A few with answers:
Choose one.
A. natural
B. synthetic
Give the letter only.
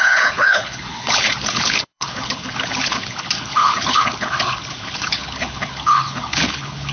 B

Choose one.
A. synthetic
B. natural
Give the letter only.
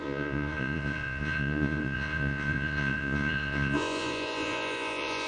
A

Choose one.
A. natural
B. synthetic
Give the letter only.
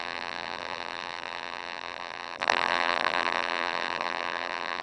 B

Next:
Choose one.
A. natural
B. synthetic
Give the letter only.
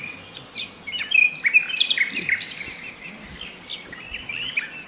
A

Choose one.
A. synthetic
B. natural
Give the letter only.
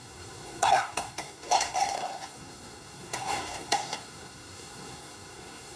A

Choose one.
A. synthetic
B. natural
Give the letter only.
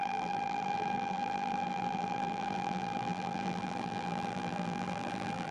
A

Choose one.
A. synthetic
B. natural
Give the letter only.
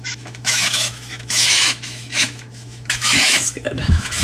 A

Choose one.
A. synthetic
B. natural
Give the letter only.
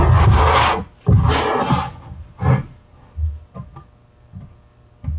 B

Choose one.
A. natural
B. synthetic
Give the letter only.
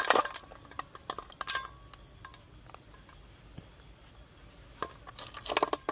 A